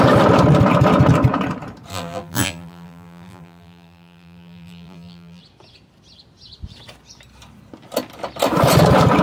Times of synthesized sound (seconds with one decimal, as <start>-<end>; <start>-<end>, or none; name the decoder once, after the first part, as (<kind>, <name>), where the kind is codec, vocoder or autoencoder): 1.9-5.4 (vocoder, BigVGAN v2)

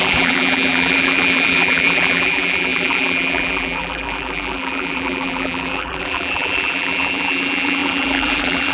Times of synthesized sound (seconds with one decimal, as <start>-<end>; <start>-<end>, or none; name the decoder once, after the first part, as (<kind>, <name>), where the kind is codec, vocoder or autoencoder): 0.0-8.7 (vocoder, BigVGAN v2)

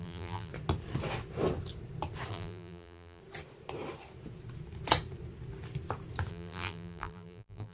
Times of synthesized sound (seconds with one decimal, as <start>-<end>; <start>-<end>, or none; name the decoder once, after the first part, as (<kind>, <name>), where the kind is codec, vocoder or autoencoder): 0.0-0.5 (vocoder, BigVGAN v2); 2.3-3.2; 6.3-7.7

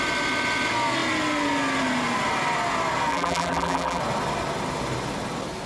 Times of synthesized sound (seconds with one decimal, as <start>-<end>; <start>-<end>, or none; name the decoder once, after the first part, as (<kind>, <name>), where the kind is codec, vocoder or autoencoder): 3.1-4.0 (vocoder, BigVGAN v2)

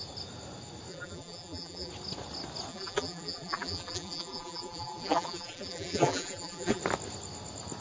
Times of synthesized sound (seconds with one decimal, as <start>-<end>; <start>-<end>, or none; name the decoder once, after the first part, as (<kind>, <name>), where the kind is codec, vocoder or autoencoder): 0.9-1.9 (vocoder, BigVGAN v2); 2.7-6.8

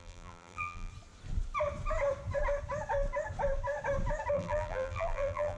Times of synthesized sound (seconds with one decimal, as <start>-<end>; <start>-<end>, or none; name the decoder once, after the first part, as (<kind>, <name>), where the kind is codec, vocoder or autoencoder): 0.0-0.9 (vocoder, BigVGAN v2); 4.3-5.6